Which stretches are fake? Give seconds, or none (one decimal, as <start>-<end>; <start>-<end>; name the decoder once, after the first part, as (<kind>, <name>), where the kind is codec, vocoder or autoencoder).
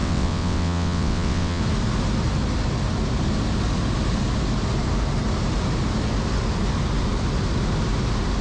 0.0-1.6 (vocoder, WaveNeXt)